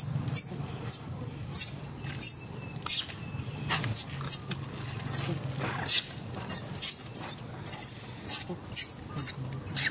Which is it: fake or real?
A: real